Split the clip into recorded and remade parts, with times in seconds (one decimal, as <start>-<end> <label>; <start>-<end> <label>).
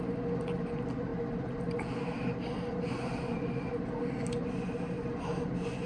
0.0-5.9 recorded